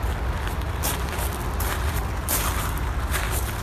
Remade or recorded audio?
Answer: recorded